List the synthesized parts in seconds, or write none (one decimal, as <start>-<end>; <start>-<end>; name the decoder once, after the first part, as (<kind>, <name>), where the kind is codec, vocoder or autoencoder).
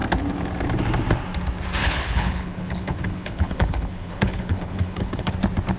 1.8-5.3 (codec, HILCodec)